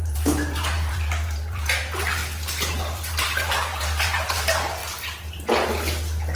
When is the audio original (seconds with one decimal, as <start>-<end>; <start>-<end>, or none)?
2.2-2.7; 4.8-6.4